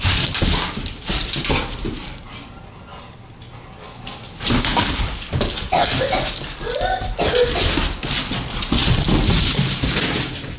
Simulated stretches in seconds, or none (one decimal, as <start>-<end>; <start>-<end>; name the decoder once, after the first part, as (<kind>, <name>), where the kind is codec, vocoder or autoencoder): none